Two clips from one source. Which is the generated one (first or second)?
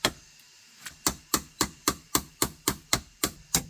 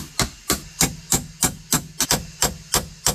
first